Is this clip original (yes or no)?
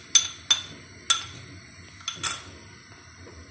yes